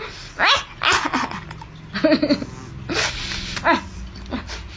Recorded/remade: recorded